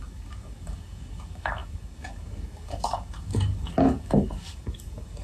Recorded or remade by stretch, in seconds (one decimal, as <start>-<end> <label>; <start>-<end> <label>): 0.0-5.2 remade